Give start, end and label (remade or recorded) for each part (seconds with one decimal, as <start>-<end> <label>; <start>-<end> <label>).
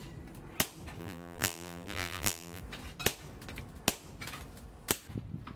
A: 0.0-1.0 recorded; 1.0-2.6 remade; 2.6-5.6 recorded